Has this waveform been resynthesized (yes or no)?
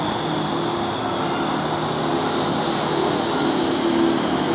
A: no